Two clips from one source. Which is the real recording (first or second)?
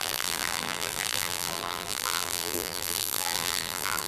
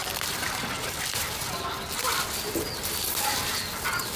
second